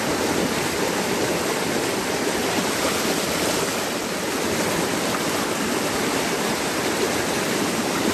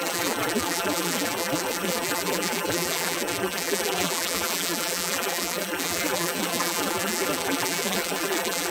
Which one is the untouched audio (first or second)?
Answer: first